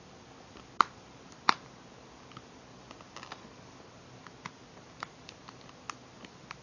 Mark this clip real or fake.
real